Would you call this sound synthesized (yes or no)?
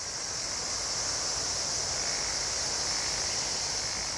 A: no